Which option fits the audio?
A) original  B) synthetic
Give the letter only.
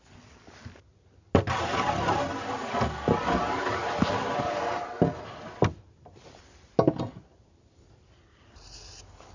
A